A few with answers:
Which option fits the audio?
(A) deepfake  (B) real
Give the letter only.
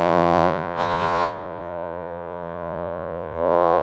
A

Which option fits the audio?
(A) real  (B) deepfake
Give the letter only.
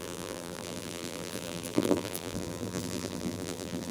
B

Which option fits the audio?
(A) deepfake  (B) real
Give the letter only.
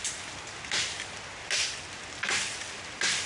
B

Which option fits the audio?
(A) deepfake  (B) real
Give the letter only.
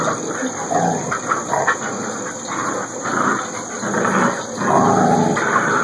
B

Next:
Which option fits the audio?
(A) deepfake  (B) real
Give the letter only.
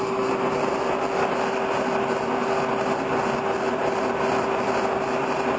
B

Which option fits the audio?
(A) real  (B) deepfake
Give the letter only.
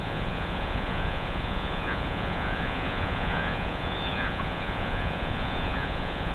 B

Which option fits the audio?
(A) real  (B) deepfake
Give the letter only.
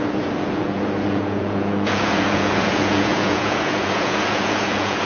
B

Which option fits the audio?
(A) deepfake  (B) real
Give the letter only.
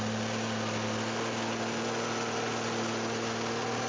B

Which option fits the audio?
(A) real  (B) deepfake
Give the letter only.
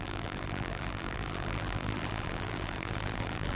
B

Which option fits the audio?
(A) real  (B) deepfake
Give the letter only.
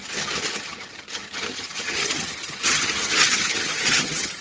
B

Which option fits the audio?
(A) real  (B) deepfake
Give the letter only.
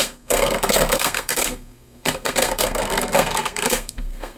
B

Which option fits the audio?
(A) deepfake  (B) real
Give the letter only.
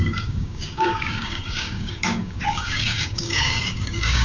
A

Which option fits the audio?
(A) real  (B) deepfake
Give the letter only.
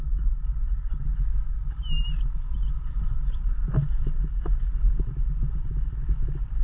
A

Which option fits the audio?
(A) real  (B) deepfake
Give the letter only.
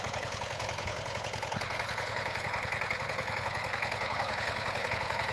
B